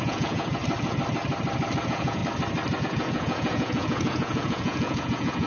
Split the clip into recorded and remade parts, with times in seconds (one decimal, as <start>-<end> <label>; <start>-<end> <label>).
0.0-0.6 remade; 0.6-1.8 recorded; 1.8-2.2 remade; 2.2-2.8 recorded; 2.8-5.5 remade